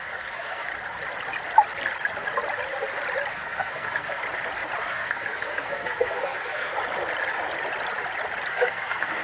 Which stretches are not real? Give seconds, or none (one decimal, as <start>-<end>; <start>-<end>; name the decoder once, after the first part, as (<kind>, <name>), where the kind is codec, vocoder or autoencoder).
0.0-0.7 (codec, SNAC); 3.3-4.2; 4.9-6.7; 8.5-9.2